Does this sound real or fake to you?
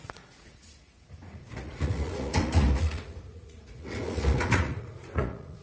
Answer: fake